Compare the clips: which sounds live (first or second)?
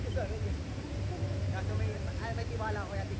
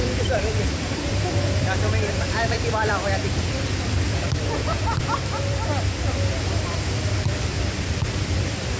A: first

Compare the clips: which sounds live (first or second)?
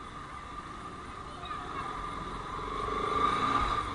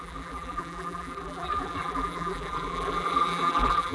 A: first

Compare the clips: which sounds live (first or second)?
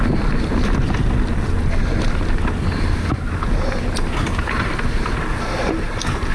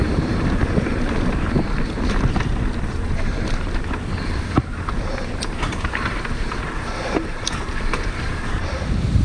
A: first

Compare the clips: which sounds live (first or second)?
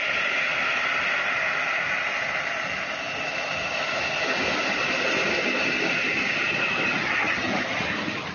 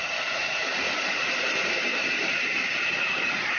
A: first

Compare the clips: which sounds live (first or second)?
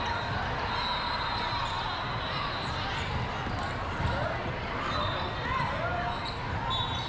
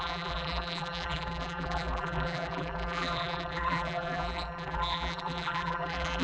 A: first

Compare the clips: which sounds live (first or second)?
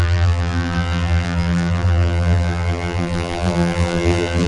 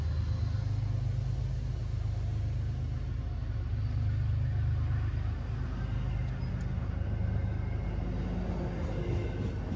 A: second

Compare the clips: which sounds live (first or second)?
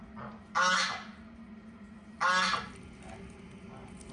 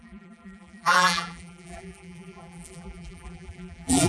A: first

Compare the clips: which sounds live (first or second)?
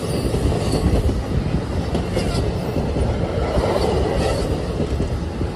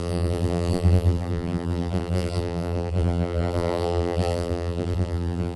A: first